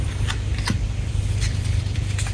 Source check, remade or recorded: remade